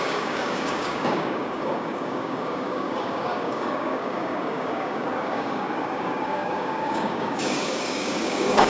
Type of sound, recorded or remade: remade